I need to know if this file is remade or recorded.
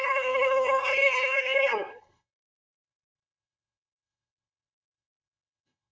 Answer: remade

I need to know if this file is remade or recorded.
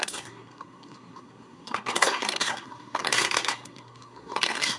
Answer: remade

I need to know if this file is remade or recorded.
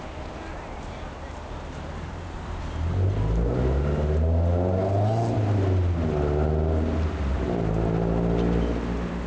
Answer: recorded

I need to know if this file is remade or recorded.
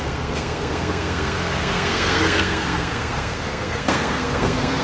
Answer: remade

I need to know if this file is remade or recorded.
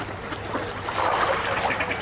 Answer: recorded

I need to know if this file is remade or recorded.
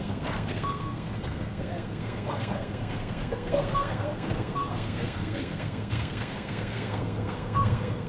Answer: remade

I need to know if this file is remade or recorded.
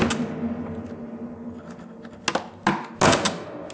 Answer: recorded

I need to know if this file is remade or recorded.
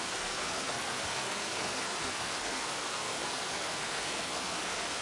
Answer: remade